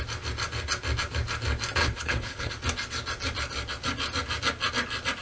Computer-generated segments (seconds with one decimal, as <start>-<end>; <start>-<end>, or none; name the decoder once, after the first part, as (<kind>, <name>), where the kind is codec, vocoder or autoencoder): 1.8-2.5 (codec, HILCodec)

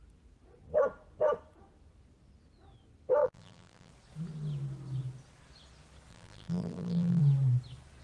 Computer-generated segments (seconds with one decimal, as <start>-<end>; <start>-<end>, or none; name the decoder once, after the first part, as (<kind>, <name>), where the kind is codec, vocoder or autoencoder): 3.2-3.9 (vocoder, BigVGAN v2); 6.1-7.2

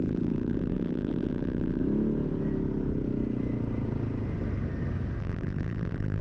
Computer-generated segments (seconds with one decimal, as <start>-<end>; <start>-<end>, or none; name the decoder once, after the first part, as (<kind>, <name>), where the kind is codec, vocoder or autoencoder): 0.0-1.8 (vocoder, BigVGAN v2); 5.2-6.2

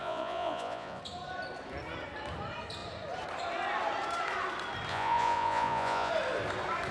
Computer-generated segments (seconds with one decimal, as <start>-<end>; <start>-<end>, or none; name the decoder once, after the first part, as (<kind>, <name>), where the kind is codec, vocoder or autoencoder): 0.0-1.0 (vocoder, Vocos); 4.9-6.1